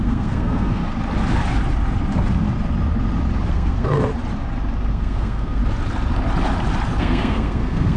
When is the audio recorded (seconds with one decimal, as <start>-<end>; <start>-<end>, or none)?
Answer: 0.8-3.5; 4.1-4.9; 5.6-7.0